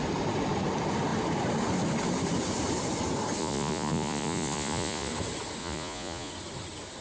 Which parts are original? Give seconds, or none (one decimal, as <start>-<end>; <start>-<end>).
0.0-3.4; 5.1-5.6; 6.3-7.0